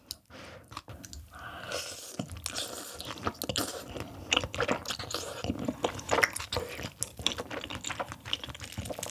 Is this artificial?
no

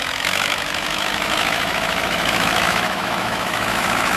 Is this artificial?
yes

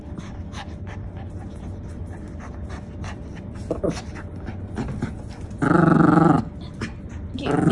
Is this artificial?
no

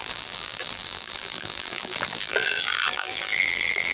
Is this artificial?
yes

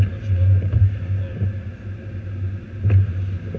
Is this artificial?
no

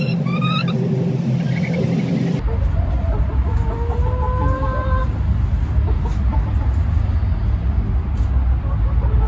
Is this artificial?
no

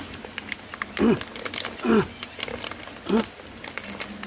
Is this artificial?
no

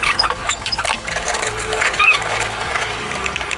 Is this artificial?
yes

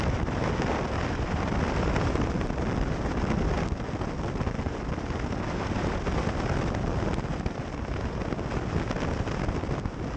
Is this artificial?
no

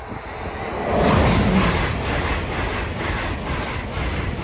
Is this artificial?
no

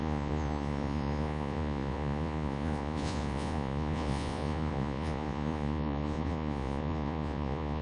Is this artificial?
yes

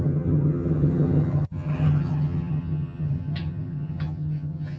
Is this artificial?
yes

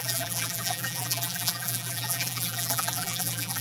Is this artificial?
yes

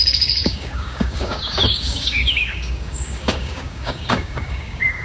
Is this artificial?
yes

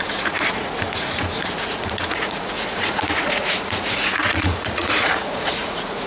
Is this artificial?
yes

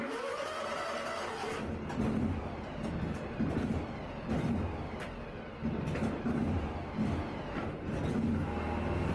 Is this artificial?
no